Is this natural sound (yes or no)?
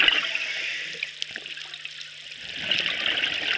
yes